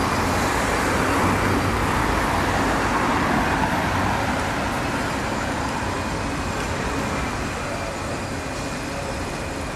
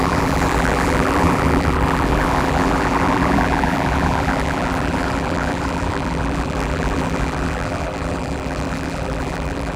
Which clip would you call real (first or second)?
first